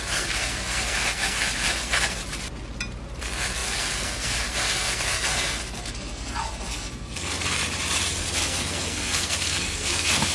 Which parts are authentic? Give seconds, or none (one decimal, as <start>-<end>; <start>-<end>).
2.2-3.2; 7.6-8.2